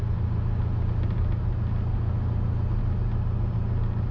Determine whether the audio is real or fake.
real